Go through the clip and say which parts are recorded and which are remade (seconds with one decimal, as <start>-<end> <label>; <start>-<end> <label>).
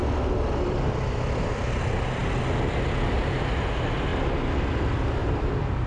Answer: 0.0-5.2 recorded; 5.2-5.9 remade